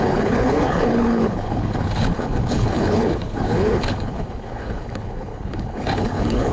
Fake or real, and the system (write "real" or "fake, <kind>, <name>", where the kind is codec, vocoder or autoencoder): fake, codec, HILCodec